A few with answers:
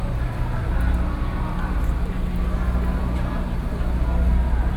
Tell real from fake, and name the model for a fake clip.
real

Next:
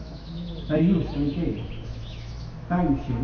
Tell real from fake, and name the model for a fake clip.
fake, autoencoder, DAC-VAE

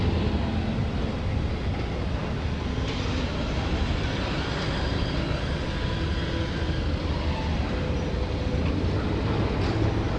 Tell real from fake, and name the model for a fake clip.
real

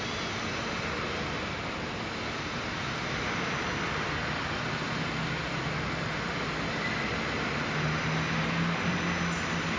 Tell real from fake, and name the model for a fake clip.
real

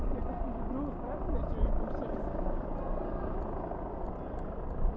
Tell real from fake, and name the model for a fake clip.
real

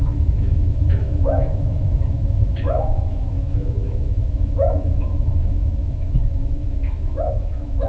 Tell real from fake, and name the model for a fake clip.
fake, autoencoder, DAC-VAE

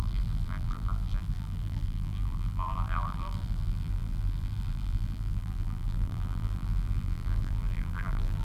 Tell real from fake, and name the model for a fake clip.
fake, vocoder, BigVGAN v2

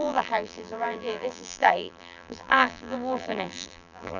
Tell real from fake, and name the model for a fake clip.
fake, vocoder, BigVGAN v2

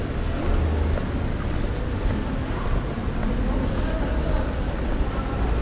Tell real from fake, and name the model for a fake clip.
real